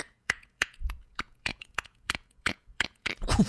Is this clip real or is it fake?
fake